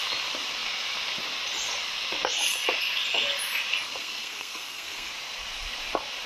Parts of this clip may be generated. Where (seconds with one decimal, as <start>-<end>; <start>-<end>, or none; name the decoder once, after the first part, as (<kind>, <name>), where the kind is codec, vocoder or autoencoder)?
4.0-5.1 (codec, SNAC)